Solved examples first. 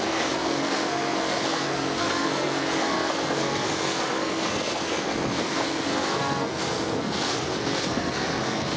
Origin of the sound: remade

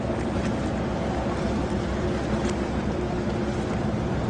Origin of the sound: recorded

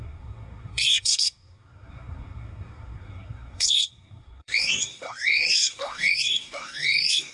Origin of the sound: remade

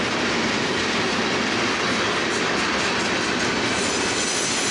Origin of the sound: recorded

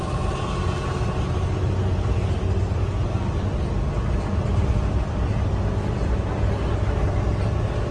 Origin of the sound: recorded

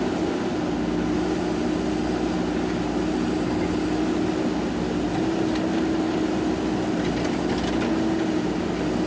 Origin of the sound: recorded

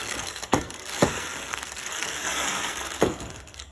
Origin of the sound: remade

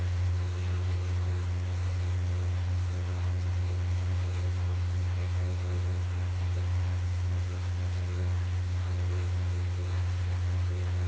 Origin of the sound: remade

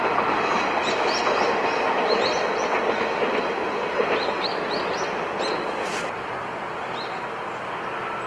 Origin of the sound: recorded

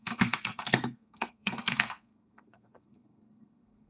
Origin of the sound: remade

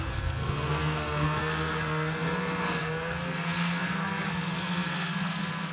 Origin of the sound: remade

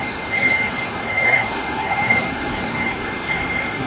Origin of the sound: remade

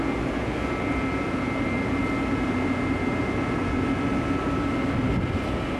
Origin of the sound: recorded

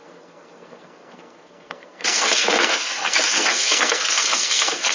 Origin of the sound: remade